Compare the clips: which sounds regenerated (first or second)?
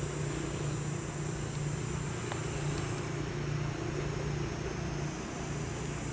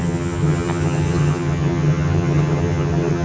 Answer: second